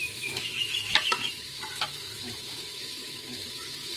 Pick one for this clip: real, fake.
fake